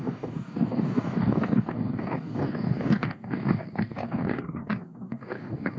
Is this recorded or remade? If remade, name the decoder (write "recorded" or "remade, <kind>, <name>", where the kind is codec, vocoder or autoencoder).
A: remade, codec, DAC